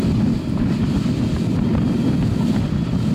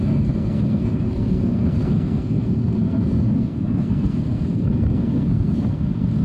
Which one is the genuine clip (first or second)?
first